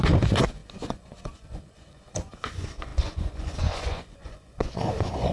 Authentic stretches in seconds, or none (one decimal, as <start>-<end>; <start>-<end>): none